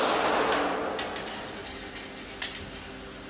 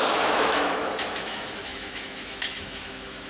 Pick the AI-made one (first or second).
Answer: second